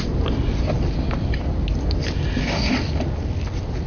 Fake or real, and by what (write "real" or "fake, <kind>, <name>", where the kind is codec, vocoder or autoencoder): real